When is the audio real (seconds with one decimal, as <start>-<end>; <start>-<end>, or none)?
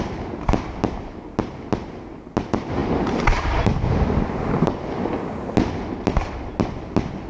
0.0-7.3